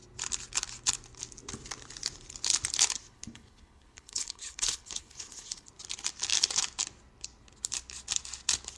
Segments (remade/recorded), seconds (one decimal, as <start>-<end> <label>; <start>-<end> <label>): 0.0-3.0 recorded; 3.0-5.7 remade; 5.7-8.8 recorded